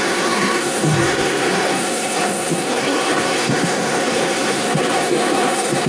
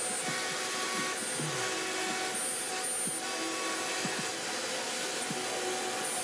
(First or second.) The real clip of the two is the second